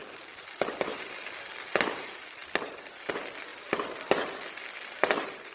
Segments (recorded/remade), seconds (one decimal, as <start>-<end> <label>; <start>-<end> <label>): 0.0-5.5 recorded